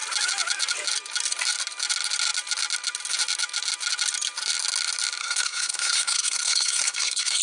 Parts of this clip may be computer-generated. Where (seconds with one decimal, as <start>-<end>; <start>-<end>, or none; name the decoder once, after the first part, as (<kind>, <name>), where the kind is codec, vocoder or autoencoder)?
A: 5.2-7.4 (codec, SNAC)